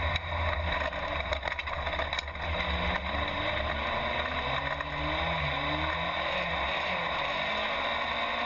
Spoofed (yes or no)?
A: no